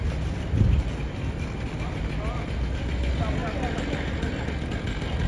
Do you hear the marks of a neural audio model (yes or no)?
no